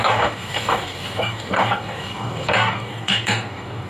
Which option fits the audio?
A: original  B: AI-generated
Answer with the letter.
B